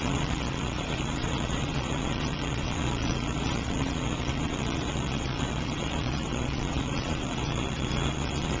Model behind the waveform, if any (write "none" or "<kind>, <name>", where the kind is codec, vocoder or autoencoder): vocoder, Vocos